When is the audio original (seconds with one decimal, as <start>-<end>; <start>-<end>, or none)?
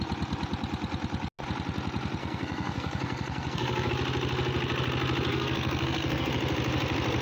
0.0-2.2; 3.9-5.3; 6.3-7.2